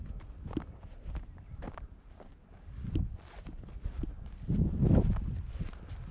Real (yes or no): yes